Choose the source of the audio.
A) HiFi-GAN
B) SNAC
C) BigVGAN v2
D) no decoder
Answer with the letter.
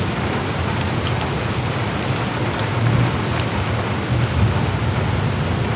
D